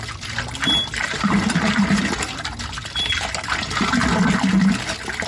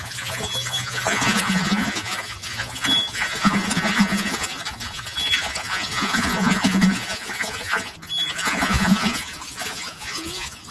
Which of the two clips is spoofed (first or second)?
second